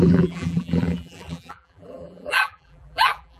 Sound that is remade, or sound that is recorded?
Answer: remade